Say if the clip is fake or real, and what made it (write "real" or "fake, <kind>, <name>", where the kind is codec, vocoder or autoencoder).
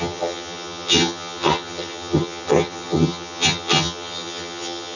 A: fake, vocoder, HiFi-GAN